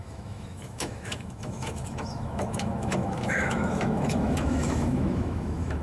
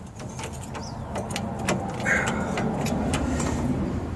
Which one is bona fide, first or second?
second